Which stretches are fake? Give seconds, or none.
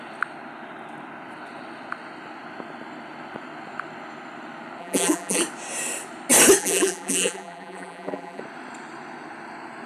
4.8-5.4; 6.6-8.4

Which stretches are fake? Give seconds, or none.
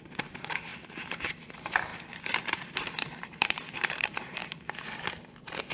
0.0-1.9; 3.2-4.4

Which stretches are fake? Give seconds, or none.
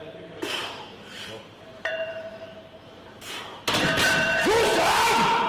0.0-3.5; 4.1-5.5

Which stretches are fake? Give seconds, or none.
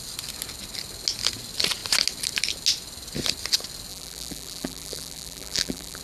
3.9-6.0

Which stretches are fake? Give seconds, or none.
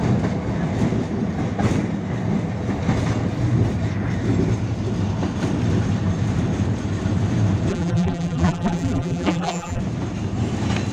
7.7-9.8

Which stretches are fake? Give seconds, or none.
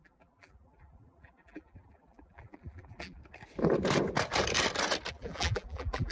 0.0-3.2; 5.1-6.1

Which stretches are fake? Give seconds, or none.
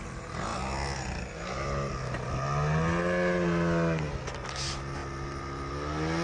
none